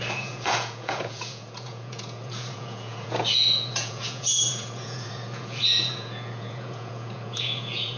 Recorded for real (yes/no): no